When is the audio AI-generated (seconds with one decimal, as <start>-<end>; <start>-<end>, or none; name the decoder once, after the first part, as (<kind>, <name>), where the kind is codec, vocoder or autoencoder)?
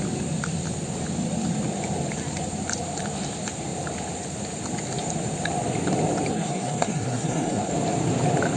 6.3-7.7 (codec, SNAC)